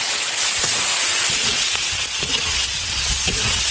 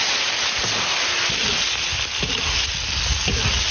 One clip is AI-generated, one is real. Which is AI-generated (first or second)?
first